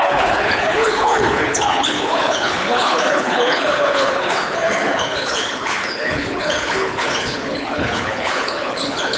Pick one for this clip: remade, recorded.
remade